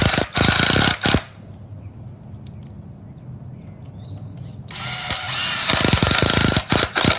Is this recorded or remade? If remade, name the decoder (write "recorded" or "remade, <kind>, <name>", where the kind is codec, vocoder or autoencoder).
recorded